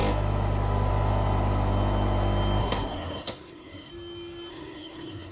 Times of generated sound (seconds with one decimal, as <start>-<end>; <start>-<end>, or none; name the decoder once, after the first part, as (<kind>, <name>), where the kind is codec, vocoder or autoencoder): 2.6-3.9 (codec, SNAC); 4.5-5.3